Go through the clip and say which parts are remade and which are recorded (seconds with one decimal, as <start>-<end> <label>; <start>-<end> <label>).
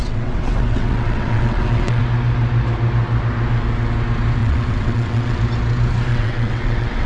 0.0-2.0 remade; 2.0-4.4 recorded; 4.4-5.4 remade; 5.4-6.1 recorded; 6.1-7.1 remade